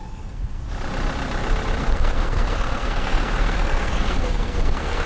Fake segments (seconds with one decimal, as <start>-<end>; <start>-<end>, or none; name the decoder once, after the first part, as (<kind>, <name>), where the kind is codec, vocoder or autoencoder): 0.0-0.6 (codec, SNAC); 1.8-5.1